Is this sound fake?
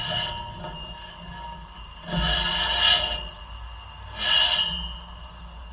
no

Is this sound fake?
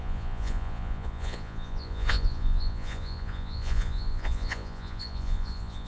yes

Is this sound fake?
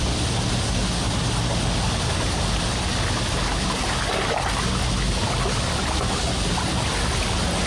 no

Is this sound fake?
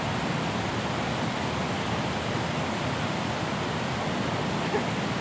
no